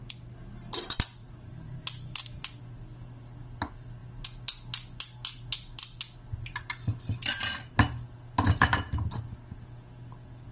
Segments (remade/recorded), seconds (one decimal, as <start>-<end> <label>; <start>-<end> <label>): 0.0-1.2 recorded; 1.2-2.6 remade; 2.6-10.5 recorded